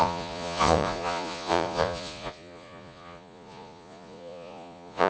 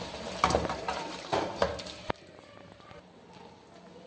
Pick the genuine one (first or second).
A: second